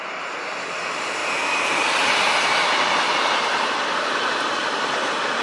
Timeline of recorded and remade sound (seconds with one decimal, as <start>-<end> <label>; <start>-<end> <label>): 0.0-5.4 recorded